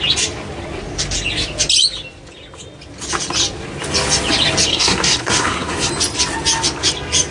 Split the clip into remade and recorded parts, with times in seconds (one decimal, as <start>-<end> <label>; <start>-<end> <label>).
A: 0.0-4.7 recorded; 4.7-5.9 remade; 5.9-7.3 recorded